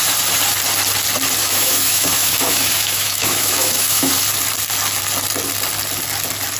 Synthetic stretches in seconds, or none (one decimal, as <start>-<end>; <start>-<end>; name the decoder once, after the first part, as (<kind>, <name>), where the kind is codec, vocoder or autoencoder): 1.4-4.1 (autoencoder, DAC-VAE)